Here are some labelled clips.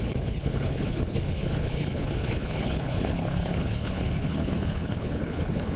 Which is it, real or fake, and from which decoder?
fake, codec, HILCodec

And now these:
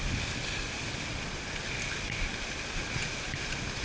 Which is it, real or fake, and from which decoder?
real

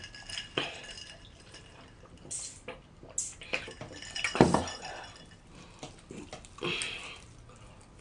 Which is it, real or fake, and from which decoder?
real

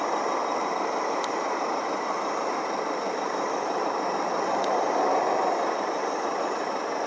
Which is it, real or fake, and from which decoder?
real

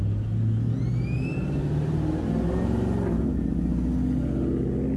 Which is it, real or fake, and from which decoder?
real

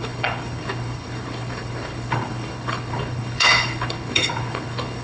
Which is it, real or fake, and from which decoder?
fake, codec, HILCodec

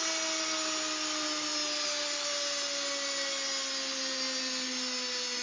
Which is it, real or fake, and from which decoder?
real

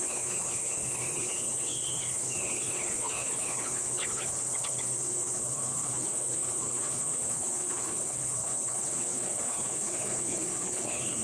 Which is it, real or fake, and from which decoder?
fake, codec, HILCodec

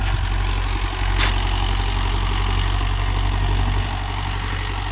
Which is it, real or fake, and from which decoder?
real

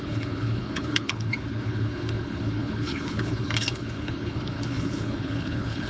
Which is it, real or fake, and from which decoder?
fake, codec, HILCodec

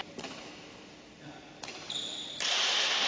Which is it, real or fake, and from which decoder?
real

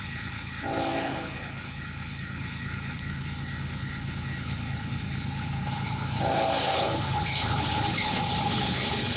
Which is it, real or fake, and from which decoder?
fake, codec, HILCodec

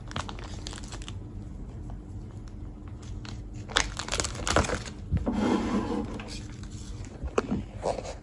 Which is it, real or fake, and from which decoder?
real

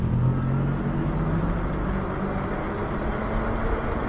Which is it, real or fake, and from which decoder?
real